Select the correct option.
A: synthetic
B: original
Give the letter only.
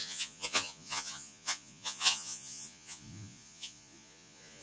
A